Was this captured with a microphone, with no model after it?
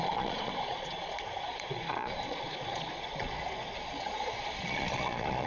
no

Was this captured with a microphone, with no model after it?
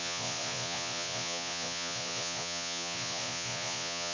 no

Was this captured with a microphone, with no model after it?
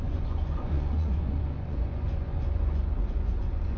no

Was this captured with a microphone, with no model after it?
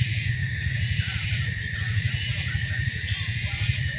no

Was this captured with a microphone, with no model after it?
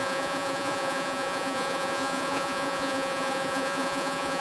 no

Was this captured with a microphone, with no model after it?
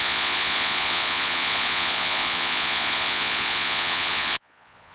no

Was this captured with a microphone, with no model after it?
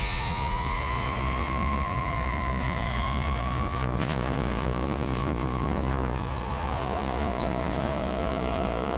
no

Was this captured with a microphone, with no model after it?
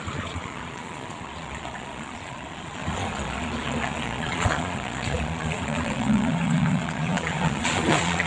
no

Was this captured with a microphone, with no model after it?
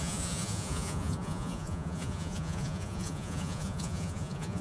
no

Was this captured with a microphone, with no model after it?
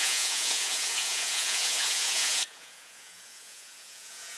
no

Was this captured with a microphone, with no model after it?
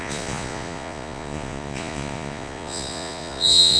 no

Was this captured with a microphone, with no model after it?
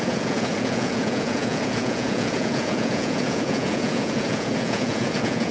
no